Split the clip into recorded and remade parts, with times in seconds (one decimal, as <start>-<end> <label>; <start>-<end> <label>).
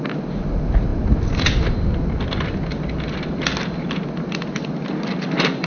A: 0.0-5.7 recorded